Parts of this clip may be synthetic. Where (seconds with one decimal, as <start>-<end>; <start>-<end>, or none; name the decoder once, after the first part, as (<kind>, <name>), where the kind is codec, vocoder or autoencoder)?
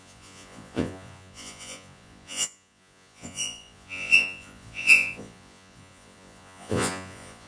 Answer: 0.0-7.5 (vocoder, Vocos)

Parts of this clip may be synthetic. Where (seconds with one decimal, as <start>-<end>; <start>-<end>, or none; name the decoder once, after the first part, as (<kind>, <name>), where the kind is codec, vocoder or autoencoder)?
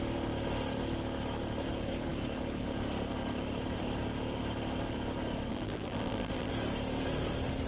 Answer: 5.5-6.5 (vocoder, BigVGAN v2)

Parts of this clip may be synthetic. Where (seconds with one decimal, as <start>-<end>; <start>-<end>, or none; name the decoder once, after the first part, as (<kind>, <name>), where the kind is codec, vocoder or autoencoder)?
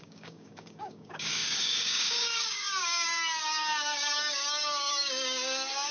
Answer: 0.0-5.9 (codec, DAC)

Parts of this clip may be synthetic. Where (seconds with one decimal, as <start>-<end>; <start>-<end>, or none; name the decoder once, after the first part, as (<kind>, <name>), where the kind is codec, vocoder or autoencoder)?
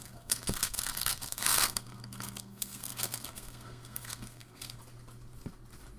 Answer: 0.0-4.8 (codec, SNAC)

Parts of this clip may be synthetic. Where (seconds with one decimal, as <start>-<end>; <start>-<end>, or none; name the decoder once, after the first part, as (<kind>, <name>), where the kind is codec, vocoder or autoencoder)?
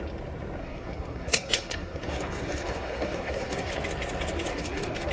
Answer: 0.6-3.7 (codec, SNAC); 4.5-5.1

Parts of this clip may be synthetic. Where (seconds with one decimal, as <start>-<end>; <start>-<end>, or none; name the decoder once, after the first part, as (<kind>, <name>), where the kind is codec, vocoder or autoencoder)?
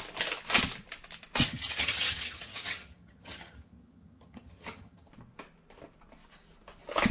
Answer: 1.4-5.1 (vocoder, HiFi-GAN)